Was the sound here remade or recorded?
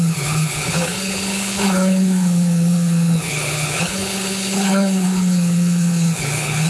remade